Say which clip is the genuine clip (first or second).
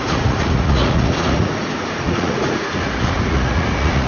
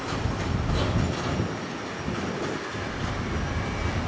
second